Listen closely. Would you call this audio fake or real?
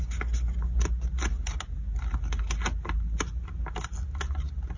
real